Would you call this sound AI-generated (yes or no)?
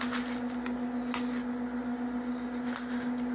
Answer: no